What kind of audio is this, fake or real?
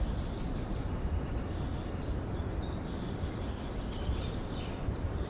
real